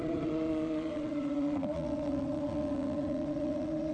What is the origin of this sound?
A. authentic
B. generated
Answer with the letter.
B